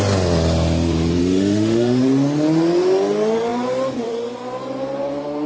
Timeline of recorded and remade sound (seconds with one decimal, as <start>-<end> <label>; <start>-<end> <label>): 0.0-1.2 recorded; 1.2-2.0 remade; 2.0-5.5 recorded